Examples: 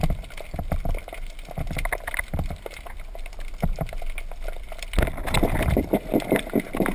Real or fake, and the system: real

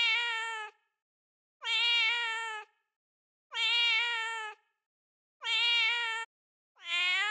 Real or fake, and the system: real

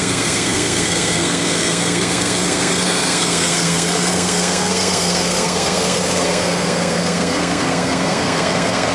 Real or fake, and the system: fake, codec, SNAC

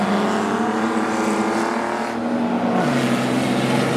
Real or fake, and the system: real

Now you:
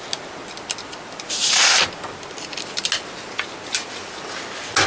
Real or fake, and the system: real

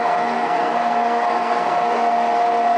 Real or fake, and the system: fake, codec, SNAC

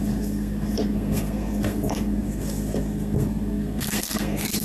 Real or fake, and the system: fake, codec, SNAC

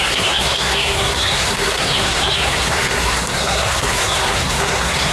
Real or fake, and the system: fake, codec, SNAC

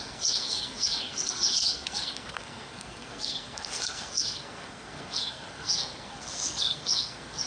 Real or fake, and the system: fake, codec, SNAC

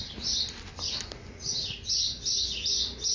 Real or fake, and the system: real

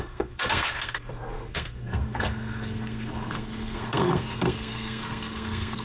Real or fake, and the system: fake, codec, SNAC